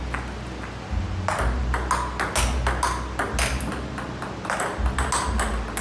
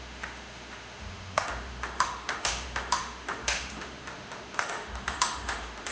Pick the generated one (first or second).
second